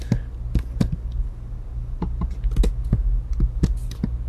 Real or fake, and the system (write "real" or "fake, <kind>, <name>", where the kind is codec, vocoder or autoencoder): real